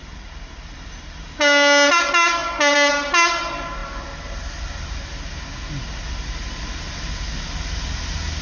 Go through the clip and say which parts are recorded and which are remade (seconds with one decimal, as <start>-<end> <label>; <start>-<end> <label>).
0.0-8.4 recorded

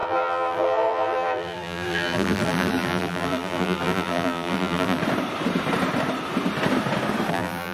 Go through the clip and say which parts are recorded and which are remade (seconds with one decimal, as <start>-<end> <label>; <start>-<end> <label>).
0.0-5.0 remade; 5.0-7.3 recorded; 7.3-7.7 remade

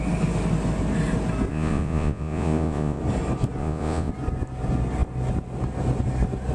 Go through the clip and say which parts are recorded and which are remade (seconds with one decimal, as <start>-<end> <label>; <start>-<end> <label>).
0.0-1.5 recorded; 1.5-3.0 remade; 3.0-3.6 recorded; 3.6-4.1 remade; 4.1-6.5 recorded

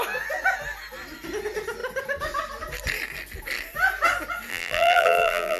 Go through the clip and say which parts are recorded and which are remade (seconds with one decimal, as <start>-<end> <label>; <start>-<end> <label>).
0.0-4.5 recorded; 4.5-5.6 remade

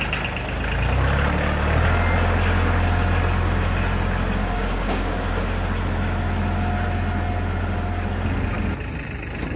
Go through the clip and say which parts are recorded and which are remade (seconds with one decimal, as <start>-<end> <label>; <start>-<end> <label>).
0.0-4.4 recorded; 4.4-5.3 remade; 5.3-9.6 recorded